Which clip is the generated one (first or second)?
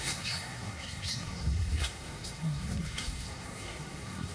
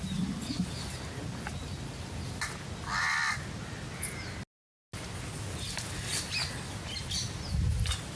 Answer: first